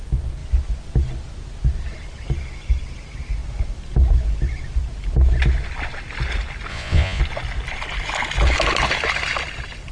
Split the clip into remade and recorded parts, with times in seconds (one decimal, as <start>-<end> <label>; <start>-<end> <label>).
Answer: 0.0-6.7 recorded; 6.7-7.2 remade; 7.2-9.9 recorded